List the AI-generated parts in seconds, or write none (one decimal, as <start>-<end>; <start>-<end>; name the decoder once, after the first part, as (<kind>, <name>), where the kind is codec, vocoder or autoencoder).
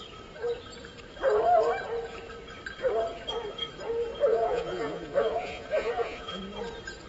4.3-6.4 (vocoder, Vocos)